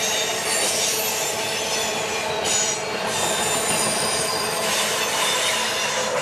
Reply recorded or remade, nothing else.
recorded